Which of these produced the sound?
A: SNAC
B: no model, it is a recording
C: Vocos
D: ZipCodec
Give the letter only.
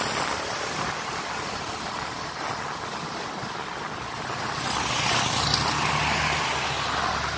B